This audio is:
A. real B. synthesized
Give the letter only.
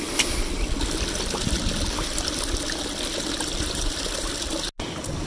A